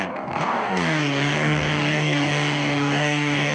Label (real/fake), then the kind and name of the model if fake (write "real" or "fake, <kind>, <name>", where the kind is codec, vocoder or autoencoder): fake, codec, DAC